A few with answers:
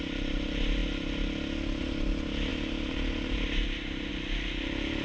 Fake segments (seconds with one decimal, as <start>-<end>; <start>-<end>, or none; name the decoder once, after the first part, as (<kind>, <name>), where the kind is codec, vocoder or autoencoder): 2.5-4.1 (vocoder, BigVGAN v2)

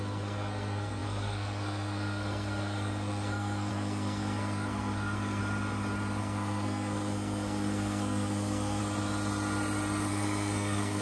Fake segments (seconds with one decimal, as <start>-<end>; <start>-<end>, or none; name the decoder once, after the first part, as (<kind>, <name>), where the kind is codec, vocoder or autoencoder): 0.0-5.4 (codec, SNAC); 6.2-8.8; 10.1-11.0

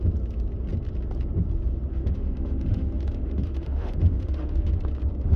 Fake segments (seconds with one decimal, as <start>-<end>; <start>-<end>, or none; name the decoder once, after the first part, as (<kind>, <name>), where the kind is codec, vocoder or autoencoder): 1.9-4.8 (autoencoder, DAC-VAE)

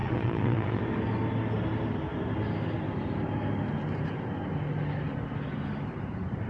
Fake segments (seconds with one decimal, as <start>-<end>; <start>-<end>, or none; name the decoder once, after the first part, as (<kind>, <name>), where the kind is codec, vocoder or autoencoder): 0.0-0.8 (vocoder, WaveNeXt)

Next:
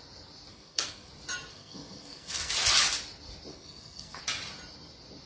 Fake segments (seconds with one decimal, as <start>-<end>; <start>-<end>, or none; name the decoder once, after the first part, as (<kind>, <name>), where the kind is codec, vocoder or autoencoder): 0.5-1.1 (codec, SNAC); 1.5-2.5; 3.5-4.2

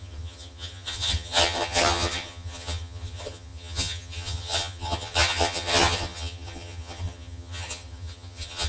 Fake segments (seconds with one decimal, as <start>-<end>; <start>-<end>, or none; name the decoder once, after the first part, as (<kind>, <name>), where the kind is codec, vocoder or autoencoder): 0.0-8.7 (vocoder, HiFi-GAN)

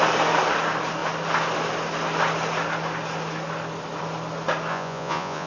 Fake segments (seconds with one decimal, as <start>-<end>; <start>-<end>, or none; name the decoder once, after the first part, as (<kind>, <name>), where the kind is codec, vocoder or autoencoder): 4.7-5.5 (vocoder, Vocos)

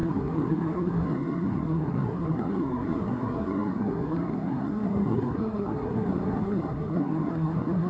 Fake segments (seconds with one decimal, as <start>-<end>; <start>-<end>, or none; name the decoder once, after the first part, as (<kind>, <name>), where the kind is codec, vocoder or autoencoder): 0.0-7.9 (codec, SNAC)